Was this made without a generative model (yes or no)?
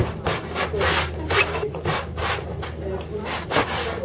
yes